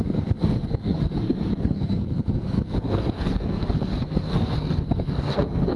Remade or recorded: remade